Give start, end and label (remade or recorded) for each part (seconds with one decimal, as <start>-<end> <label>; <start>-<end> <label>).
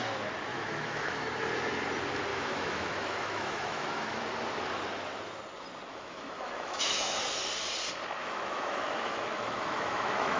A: 0.0-0.5 recorded; 0.5-1.2 remade; 1.2-2.3 recorded; 2.3-4.2 remade; 4.2-5.9 recorded; 5.9-7.2 remade; 7.2-8.2 recorded; 8.2-10.4 remade